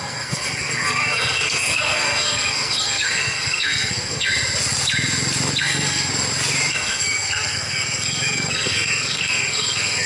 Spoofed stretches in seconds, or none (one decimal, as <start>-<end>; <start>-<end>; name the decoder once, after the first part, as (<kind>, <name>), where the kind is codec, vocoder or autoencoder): 0.0-4.3 (codec, SNAC); 5.6-6.1; 6.7-10.1